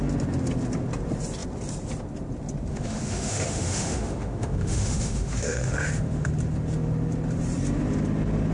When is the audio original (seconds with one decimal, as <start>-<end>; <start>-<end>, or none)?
0.0-2.7; 6.3-8.5